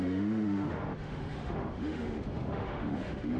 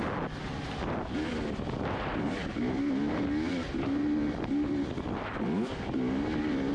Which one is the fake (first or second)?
first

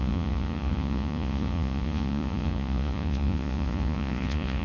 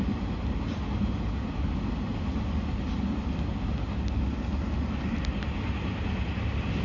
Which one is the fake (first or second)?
first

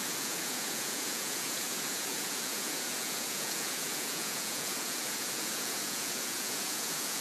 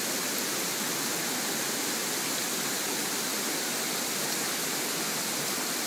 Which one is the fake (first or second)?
first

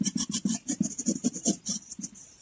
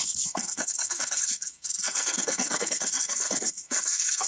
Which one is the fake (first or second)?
second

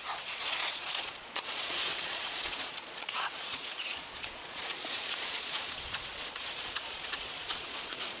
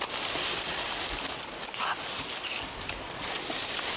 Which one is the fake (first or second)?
first